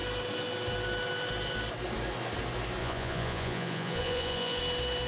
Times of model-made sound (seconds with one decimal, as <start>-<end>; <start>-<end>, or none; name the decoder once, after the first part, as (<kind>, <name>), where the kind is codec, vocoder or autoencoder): 2.8-4.6 (vocoder, Vocos)